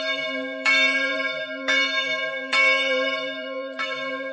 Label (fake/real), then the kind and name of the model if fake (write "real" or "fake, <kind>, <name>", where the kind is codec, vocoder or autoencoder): fake, vocoder, BigVGAN v2